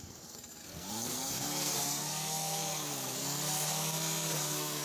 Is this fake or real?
fake